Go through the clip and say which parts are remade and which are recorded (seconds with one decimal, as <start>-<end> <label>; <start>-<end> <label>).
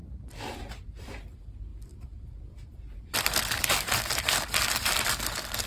0.0-0.6 remade; 0.6-1.7 recorded; 1.7-5.1 remade; 5.1-5.7 recorded